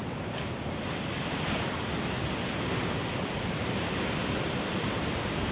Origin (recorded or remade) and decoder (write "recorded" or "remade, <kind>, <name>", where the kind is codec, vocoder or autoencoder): remade, vocoder, BigVGAN v2